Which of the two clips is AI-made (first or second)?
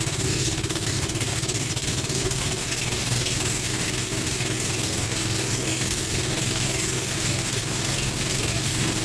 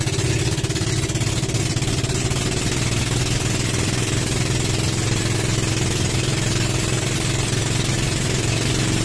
first